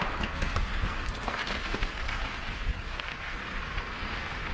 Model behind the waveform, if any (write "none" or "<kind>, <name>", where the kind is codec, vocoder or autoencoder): codec, SNAC